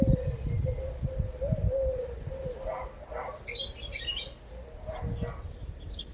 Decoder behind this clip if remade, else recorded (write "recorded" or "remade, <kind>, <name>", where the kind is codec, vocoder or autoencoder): recorded